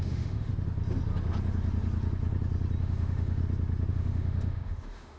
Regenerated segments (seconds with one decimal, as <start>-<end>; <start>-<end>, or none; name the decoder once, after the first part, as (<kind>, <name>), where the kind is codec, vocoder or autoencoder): 0.0-0.5 (autoencoder, DAC-VAE); 2.8-3.4; 3.9-5.2